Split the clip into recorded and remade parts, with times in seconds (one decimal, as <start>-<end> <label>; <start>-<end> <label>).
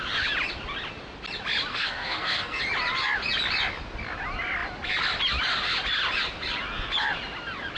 0.0-1.7 recorded; 1.7-2.6 remade; 2.6-7.8 recorded